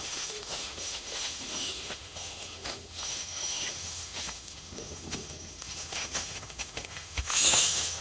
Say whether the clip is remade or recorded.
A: remade